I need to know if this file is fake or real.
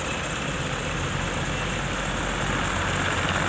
real